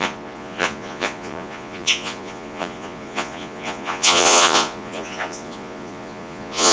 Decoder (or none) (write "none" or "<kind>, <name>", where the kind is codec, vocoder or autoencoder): vocoder, Vocos